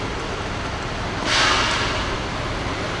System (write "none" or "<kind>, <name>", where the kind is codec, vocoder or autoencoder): none